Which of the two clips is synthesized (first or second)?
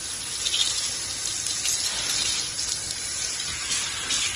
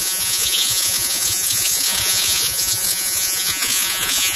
second